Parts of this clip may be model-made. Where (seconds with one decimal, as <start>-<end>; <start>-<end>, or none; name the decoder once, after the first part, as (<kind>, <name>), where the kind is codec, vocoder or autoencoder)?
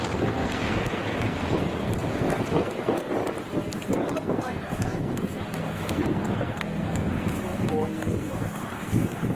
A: 0.0-3.1 (codec, SNAC); 3.6-9.4